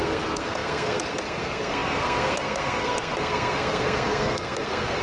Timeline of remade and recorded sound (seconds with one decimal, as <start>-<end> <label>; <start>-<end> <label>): 0.0-5.0 remade